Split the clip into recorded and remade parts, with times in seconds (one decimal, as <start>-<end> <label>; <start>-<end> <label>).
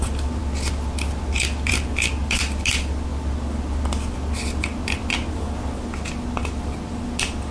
0.0-7.5 recorded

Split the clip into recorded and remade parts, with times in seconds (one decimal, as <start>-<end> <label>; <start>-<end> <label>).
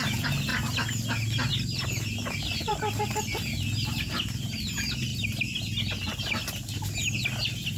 0.0-7.8 recorded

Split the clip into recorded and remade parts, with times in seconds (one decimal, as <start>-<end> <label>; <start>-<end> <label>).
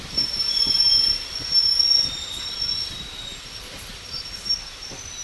0.0-1.7 remade; 1.7-2.9 recorded; 2.9-5.2 remade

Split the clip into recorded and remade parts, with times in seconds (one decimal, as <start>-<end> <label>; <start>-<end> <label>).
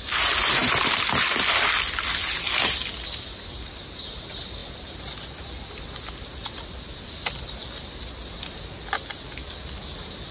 0.0-10.3 recorded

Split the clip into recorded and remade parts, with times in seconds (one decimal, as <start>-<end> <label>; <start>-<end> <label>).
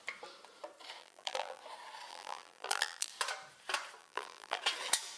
0.0-1.0 recorded; 1.0-1.6 remade; 1.6-2.1 recorded; 2.1-3.1 remade; 3.1-4.0 recorded; 4.0-4.6 remade; 4.6-5.2 recorded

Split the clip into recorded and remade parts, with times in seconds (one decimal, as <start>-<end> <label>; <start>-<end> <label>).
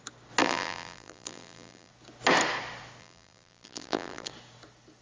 0.0-0.4 recorded; 0.4-1.9 remade; 1.9-3.0 recorded; 3.0-4.3 remade; 4.3-5.0 recorded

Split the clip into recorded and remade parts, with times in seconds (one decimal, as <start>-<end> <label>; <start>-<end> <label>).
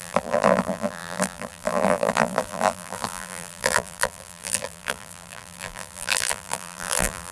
0.0-7.3 remade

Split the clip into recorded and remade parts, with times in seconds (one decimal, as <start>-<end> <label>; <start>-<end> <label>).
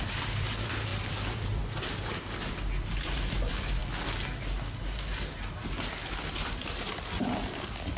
0.0-3.8 remade; 3.8-5.6 recorded; 5.6-8.0 remade